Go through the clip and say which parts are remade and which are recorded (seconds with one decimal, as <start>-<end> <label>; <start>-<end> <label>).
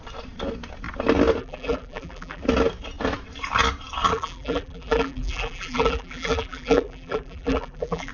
0.0-1.4 recorded; 1.4-2.4 remade; 2.4-4.1 recorded; 4.1-8.1 remade